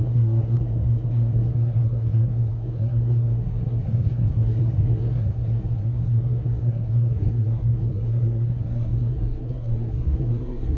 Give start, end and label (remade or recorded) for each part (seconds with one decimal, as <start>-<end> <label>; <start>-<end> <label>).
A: 0.0-10.8 remade